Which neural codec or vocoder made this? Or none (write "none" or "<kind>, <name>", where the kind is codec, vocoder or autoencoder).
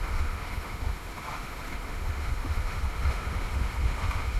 autoencoder, DAC-VAE